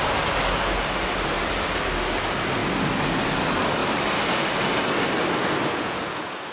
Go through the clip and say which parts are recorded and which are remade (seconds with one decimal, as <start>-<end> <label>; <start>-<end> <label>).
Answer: 0.0-5.7 recorded; 5.7-6.5 remade